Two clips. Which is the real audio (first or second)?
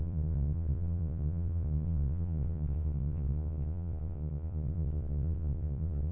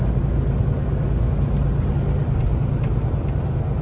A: second